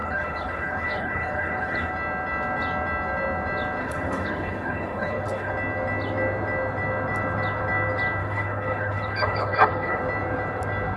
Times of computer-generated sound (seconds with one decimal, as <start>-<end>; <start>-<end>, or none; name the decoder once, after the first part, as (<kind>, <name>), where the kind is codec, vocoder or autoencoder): 0.0-1.9 (codec, HILCodec); 3.8-5.5; 8.2-10.0